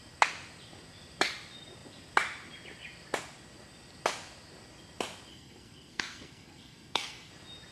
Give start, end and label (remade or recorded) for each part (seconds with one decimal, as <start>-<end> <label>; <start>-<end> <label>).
0.0-5.3 recorded; 5.3-7.3 remade; 7.3-7.7 recorded